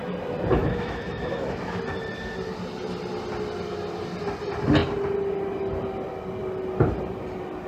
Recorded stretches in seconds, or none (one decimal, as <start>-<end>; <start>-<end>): 0.0-0.6; 1.8-7.7